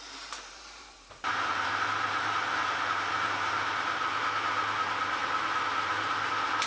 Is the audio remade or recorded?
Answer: remade